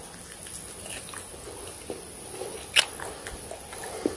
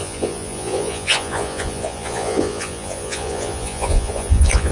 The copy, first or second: second